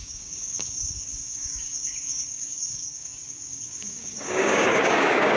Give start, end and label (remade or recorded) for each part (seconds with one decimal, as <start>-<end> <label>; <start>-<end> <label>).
0.0-5.4 remade